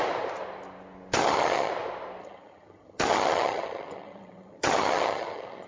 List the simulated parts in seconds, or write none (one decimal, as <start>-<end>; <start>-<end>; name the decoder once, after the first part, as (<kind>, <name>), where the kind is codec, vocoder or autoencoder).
1.2-1.7 (vocoder, HiFi-GAN); 2.2-5.7